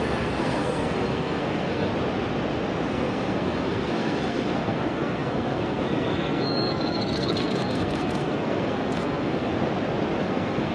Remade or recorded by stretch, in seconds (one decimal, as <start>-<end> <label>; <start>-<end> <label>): 0.0-1.9 remade; 1.9-2.9 recorded; 2.9-9.5 remade; 9.5-10.2 recorded; 10.2-10.7 remade